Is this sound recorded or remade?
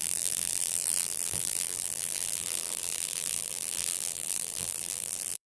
remade